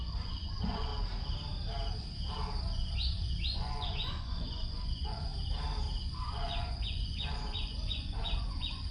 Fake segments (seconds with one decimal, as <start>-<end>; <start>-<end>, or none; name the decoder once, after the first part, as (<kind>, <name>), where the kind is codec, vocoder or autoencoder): 0.0-0.9 (vocoder, Vocos); 2.6-5.3; 6.0-8.9